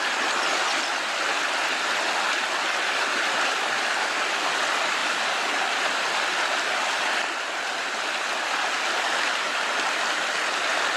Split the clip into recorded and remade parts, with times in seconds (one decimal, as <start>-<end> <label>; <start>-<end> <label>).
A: 0.0-11.0 recorded

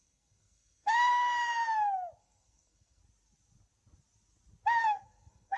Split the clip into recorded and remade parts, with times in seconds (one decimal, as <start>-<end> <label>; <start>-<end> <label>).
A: 0.0-1.1 remade; 1.1-2.2 recorded; 2.2-3.0 remade; 3.0-4.8 recorded; 4.8-5.6 remade

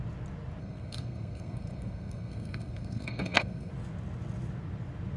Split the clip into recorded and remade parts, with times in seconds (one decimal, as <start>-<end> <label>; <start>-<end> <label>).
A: 0.0-0.6 recorded; 0.6-3.7 remade; 3.7-5.2 recorded

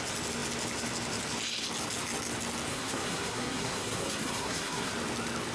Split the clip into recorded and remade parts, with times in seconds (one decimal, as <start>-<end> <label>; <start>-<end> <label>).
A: 0.0-2.7 recorded; 2.7-4.9 remade; 4.9-5.5 recorded

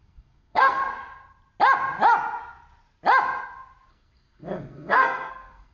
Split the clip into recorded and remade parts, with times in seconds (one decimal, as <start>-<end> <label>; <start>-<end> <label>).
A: 0.0-0.8 remade; 0.8-3.9 recorded; 3.9-5.7 remade

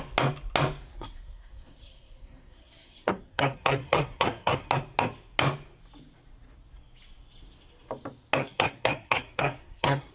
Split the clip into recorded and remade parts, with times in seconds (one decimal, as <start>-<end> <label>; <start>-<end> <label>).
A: 0.0-0.9 recorded; 0.9-4.7 remade; 4.7-8.4 recorded; 8.4-10.1 remade